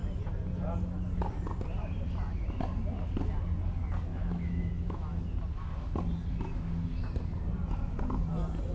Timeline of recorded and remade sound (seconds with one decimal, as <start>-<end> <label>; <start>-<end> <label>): 0.0-4.1 recorded; 4.1-5.2 remade; 5.2-8.7 recorded